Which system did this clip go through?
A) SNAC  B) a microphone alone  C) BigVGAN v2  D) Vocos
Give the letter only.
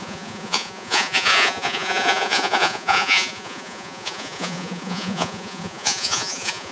D